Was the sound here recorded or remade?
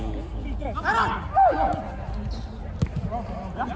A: recorded